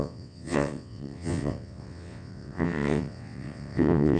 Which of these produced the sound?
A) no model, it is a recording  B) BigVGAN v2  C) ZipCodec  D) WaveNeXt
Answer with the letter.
D